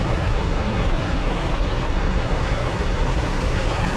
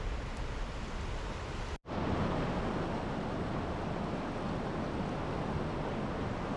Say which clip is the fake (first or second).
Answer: first